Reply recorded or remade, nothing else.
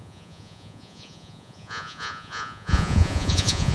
remade